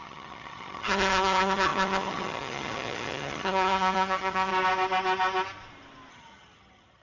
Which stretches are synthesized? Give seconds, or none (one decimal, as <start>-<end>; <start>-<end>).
0.0-4.5; 6.1-7.0